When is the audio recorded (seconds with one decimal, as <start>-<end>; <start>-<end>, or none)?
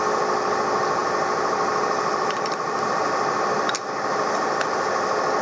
0.0-5.4